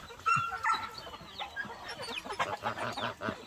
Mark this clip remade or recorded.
recorded